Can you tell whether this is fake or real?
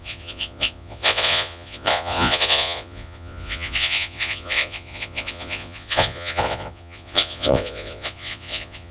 fake